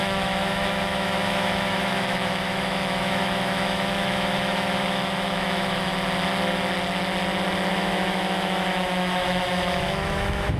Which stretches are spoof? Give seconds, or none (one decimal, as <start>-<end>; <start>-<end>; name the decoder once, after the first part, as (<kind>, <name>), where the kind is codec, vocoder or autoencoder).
0.0-5.9 (autoencoder, DAC-VAE); 7.7-10.6

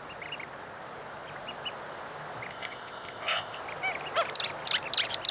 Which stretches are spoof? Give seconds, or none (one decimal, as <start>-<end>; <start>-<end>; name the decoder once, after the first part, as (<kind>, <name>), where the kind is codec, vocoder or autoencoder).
2.5-3.6 (codec, ZipCodec)

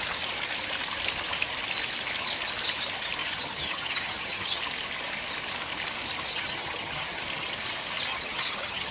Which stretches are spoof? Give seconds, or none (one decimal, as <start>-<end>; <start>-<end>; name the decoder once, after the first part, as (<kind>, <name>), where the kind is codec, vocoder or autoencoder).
3.2-4.6 (vocoder, HiFi-GAN); 6.3-7.2; 8.1-8.9

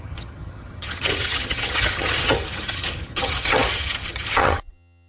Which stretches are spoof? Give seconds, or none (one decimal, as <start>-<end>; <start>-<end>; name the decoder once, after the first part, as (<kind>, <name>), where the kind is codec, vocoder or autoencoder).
0.0-5.1 (vocoder, HiFi-GAN)

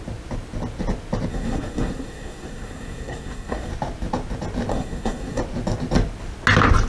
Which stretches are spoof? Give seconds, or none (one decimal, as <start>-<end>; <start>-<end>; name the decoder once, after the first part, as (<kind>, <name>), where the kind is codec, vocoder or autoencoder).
1.3-3.7 (codec, SNAC); 4.7-5.4

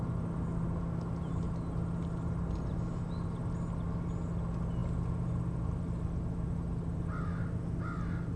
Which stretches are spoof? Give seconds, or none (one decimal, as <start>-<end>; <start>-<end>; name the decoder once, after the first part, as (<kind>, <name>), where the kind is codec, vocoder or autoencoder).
none

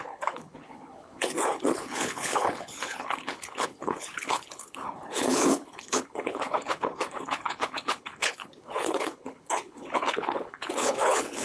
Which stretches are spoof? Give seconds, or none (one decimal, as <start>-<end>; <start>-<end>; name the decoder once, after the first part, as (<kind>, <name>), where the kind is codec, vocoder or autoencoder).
0.0-11.4 (codec, HILCodec)

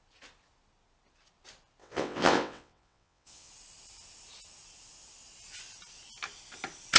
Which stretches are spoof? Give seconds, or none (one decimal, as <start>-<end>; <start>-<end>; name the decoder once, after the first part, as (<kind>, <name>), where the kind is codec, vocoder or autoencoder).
1.8-3.5 (vocoder, WaveNeXt)